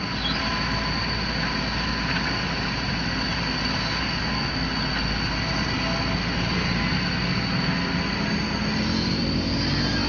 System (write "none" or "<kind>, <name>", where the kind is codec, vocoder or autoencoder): none